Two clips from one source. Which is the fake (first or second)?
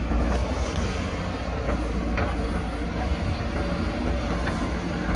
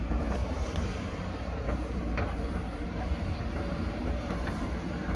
second